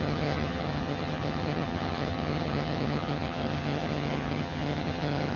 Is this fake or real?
fake